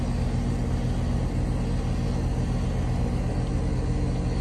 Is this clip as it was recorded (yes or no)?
yes